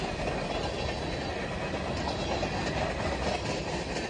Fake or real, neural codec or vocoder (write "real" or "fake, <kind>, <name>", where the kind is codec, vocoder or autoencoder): real